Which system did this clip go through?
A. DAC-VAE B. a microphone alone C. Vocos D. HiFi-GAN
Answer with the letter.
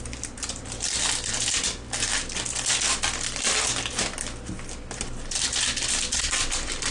B